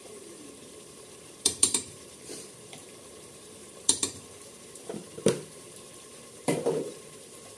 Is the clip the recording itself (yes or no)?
no